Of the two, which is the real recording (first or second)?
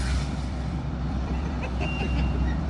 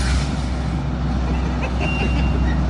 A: second